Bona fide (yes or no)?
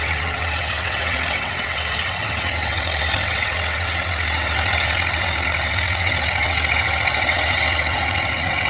no